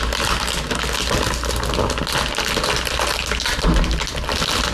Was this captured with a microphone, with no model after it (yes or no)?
yes